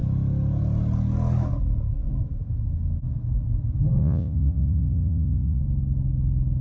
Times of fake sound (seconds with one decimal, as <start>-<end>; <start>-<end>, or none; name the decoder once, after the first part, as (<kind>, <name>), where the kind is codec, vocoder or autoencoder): 4.0-5.6 (vocoder, Vocos)